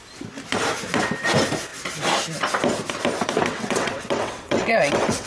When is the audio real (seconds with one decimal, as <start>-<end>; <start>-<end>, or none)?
0.0-3.5